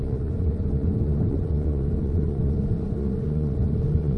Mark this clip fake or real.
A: fake